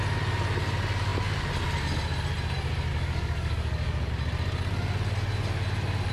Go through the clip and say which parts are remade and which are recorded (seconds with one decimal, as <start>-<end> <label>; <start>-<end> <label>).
0.0-2.9 recorded; 2.9-4.1 remade; 4.1-6.1 recorded